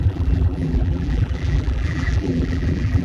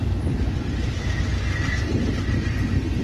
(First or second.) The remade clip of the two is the first